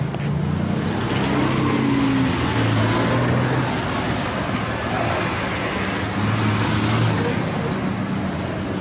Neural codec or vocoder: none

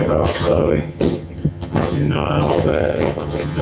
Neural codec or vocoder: vocoder, HiFi-GAN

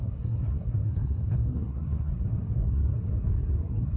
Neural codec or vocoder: codec, SNAC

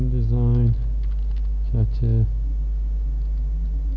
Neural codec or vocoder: none